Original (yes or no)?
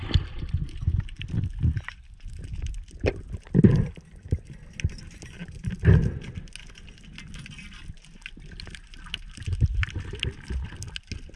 yes